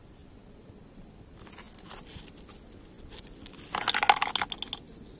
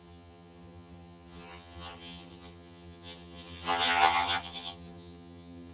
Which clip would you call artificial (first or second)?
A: second